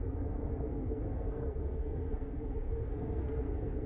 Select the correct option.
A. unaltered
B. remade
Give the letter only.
B